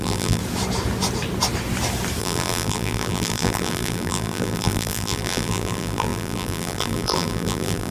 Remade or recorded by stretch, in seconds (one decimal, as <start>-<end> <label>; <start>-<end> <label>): 0.0-0.4 remade; 0.4-2.2 recorded; 2.2-7.9 remade